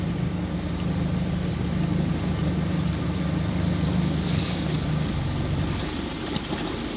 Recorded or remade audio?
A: recorded